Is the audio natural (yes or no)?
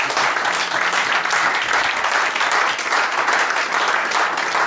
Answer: yes